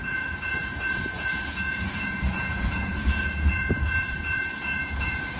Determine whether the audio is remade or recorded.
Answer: remade